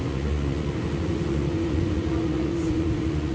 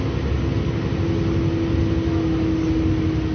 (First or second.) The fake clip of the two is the first